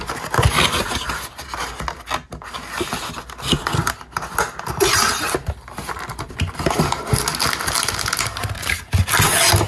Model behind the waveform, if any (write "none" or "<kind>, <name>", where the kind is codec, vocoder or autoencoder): none